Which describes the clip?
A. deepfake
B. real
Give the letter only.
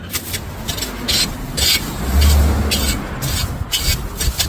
B